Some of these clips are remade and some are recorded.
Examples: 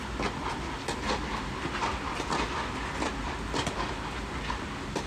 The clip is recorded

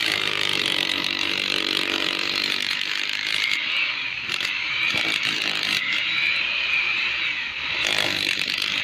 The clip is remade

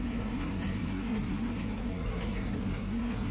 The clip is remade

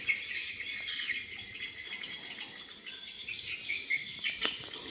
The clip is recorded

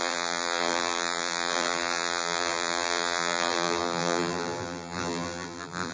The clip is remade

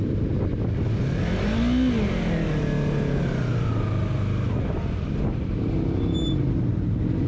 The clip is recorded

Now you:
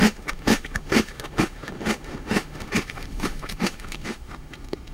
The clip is remade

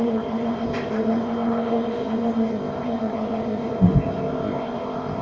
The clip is remade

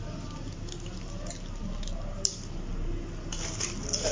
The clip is recorded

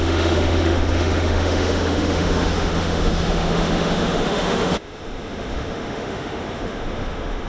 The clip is remade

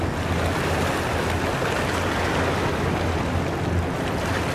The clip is recorded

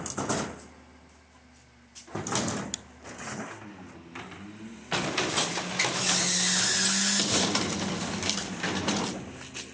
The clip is recorded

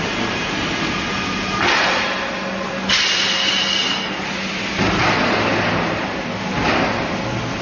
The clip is recorded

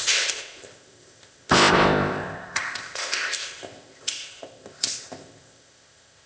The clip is remade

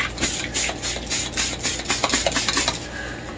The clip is recorded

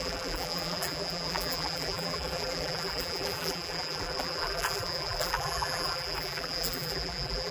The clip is remade